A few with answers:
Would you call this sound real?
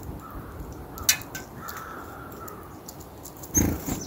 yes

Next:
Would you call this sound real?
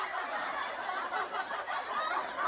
no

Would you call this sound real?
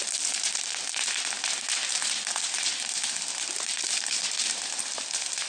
no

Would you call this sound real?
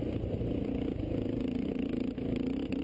no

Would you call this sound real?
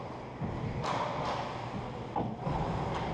yes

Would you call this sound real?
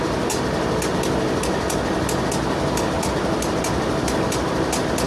yes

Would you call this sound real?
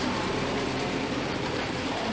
no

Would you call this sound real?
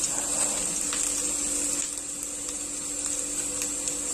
yes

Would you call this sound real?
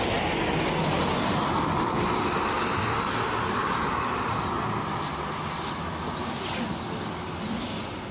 yes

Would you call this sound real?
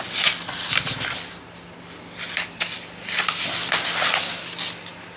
yes